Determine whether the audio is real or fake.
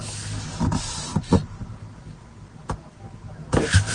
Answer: real